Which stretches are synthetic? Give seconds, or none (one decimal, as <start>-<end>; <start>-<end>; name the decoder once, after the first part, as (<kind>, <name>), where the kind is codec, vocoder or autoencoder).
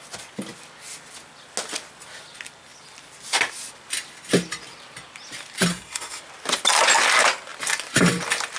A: 5.7-6.2 (codec, SNAC)